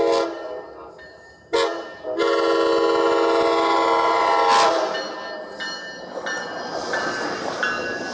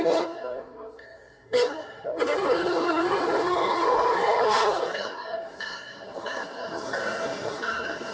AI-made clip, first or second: second